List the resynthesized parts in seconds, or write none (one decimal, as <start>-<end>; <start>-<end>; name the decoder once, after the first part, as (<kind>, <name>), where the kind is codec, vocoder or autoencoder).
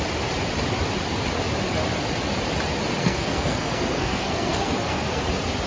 3.0-5.2 (codec, SNAC)